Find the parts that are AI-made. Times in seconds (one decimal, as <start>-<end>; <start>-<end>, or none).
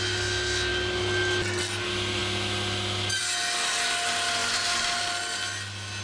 none